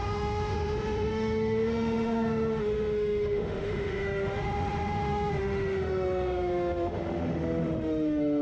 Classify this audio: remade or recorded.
remade